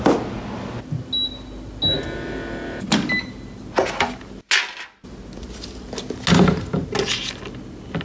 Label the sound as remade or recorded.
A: recorded